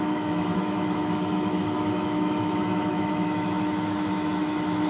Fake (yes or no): yes